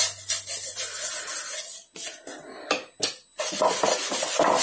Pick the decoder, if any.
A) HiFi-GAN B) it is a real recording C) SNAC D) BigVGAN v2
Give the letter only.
B